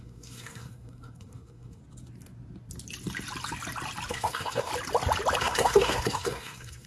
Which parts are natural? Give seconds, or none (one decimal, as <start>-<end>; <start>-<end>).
1.8-4.1; 4.7-5.4